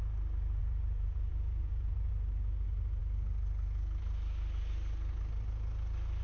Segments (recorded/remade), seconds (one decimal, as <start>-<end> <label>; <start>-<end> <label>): 0.0-0.6 recorded; 0.6-2.1 remade; 2.1-6.2 recorded